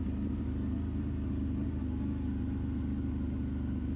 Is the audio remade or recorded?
recorded